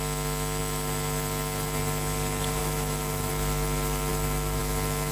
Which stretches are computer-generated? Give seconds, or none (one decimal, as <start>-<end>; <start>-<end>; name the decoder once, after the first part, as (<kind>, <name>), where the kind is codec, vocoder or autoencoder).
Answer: 2.6-3.3 (autoencoder, DAC-VAE); 4.1-4.6